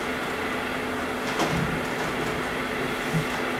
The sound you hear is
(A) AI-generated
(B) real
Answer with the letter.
B